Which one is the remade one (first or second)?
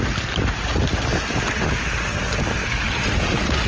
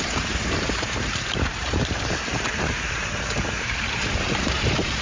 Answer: second